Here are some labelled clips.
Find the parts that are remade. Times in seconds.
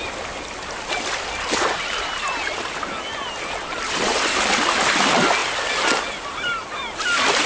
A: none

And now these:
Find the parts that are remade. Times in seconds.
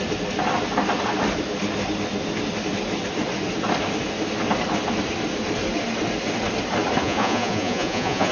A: 7.0-8.3 (vocoder, Vocos)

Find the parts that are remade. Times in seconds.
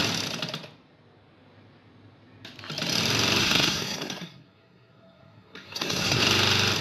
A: 3.4-6.2 (codec, SNAC)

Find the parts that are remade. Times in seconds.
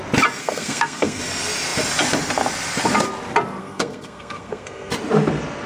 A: 0.4-1.2 (codec, SNAC); 3.6-4.9